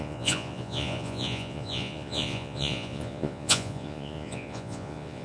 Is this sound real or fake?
fake